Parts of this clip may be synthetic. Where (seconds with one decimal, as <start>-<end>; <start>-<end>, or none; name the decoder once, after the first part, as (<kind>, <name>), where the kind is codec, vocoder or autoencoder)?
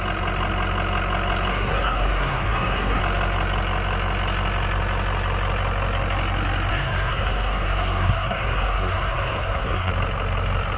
1.5-3.0 (codec, SNAC); 6.7-9.9